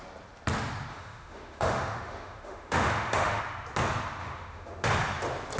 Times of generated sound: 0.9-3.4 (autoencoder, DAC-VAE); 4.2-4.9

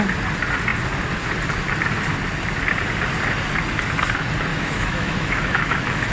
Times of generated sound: 4.5-6.1 (autoencoder, DAC-VAE)

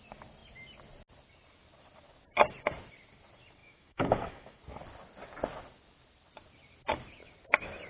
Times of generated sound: 3.6-4.6 (autoencoder, DAC-VAE)